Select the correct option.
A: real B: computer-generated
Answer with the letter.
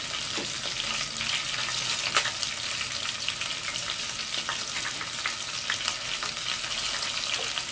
A